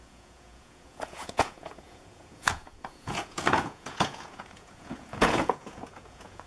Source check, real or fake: fake